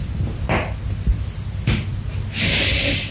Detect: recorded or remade recorded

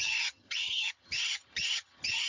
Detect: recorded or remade remade